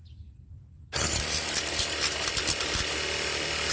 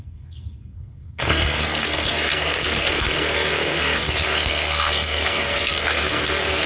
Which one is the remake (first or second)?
second